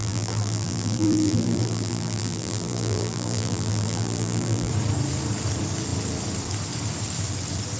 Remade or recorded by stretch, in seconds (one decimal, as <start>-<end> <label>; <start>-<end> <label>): 0.0-4.7 remade; 4.7-7.8 recorded